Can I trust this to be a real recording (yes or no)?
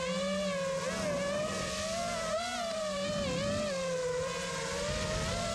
yes